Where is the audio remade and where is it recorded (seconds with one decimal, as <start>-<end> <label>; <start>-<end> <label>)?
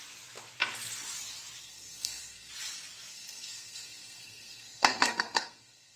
0.0-1.6 recorded; 1.6-2.5 remade; 2.5-3.1 recorded; 3.1-6.0 remade